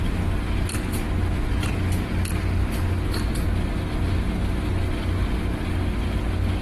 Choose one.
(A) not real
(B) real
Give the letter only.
B